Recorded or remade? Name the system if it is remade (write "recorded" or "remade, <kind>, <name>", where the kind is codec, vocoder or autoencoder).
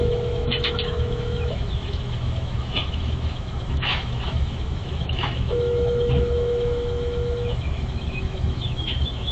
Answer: remade, autoencoder, DAC-VAE